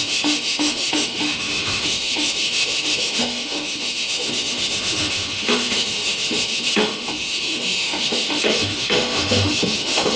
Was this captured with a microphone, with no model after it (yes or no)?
no